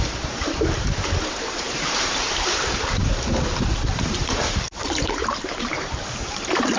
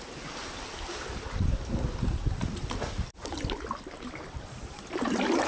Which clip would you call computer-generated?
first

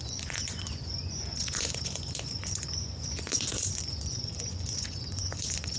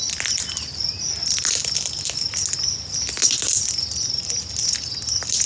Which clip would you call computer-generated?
first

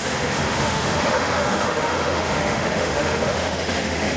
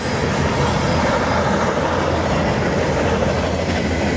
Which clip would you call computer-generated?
first